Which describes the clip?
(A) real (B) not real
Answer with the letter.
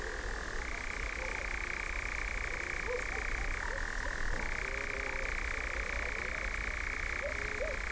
A